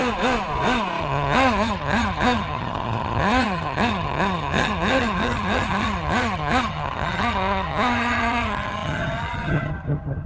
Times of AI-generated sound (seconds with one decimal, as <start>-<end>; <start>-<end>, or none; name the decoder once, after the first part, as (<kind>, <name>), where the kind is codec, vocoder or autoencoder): 1.0-10.3 (vocoder, HiFi-GAN)